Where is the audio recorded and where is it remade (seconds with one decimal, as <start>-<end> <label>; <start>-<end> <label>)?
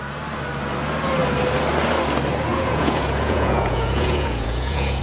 0.0-2.5 recorded; 2.5-5.0 remade